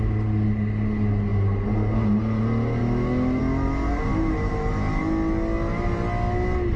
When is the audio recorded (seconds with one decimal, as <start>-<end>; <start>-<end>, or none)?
0.0-2.8; 3.4-4.1; 5.0-6.8